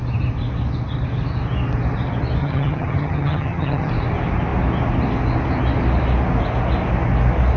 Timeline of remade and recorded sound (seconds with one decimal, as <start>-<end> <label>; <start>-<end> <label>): 0.0-2.4 recorded; 2.4-3.9 remade; 3.9-7.6 recorded